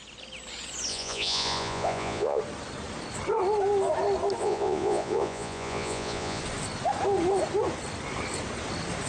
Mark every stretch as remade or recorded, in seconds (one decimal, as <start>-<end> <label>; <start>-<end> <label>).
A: 0.0-0.9 recorded; 0.9-2.4 remade; 2.4-4.4 recorded; 4.4-6.4 remade; 6.4-9.1 recorded